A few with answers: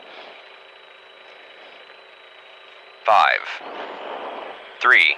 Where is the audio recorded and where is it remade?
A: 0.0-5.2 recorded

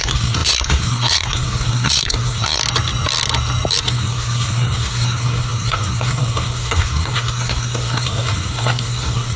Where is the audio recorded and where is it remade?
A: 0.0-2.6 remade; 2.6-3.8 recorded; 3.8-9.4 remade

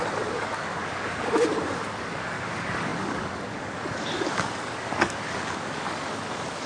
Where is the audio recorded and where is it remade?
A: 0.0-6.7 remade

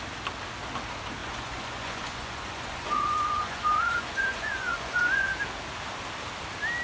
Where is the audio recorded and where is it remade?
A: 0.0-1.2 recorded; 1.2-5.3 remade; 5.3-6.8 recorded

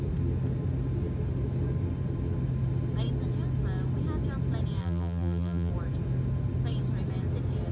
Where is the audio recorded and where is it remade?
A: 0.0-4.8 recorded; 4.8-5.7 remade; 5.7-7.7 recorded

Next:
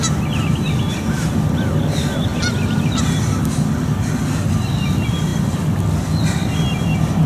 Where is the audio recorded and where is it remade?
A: 0.0-7.3 recorded